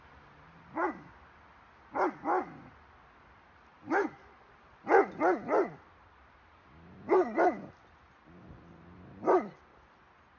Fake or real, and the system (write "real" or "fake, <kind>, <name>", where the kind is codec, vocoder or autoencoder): real